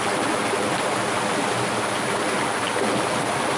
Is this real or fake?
real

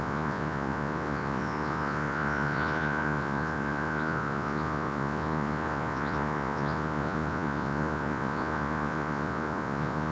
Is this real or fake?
fake